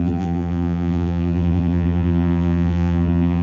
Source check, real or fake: fake